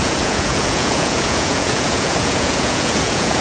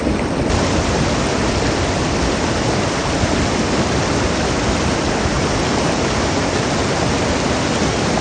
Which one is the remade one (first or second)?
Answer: first